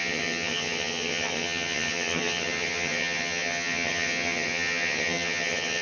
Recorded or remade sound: remade